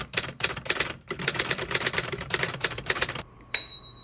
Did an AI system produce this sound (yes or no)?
yes